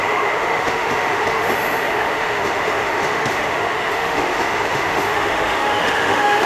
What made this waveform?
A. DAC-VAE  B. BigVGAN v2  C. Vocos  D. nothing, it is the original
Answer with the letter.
A